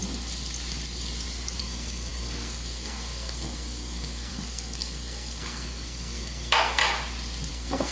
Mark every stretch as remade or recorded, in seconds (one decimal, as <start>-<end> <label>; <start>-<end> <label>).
0.0-1.6 recorded; 1.6-6.8 remade; 6.8-7.5 recorded; 7.5-7.9 remade

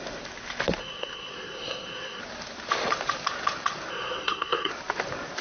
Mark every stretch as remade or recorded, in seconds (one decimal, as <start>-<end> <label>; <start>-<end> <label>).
0.0-0.8 recorded; 0.8-2.2 remade; 2.2-3.9 recorded; 3.9-4.7 remade; 4.7-5.4 recorded

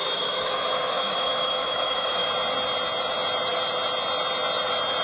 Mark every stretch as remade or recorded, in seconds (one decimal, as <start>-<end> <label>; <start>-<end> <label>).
0.0-2.3 remade; 2.3-5.0 recorded

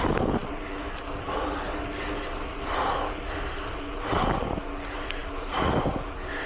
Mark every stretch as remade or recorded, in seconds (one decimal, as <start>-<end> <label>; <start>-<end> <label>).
0.0-5.2 recorded; 5.2-5.8 remade; 5.8-6.5 recorded

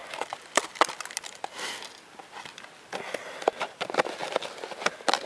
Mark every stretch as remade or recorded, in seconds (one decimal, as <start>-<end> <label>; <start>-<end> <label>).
0.0-3.2 recorded; 3.2-5.3 remade

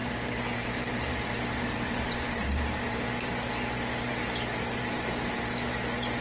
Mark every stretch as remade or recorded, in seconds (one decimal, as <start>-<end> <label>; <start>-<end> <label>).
0.0-3.5 remade; 3.5-4.1 recorded; 4.1-5.5 remade; 5.5-6.2 recorded

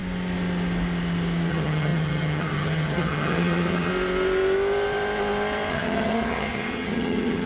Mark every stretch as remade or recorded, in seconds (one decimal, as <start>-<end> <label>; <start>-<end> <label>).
0.0-1.5 recorded; 1.5-3.9 remade; 3.9-5.7 recorded; 5.7-7.5 remade